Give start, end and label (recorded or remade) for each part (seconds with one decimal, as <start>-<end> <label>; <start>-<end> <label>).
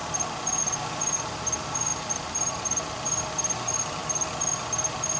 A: 0.0-1.9 recorded; 1.9-3.3 remade; 3.3-5.2 recorded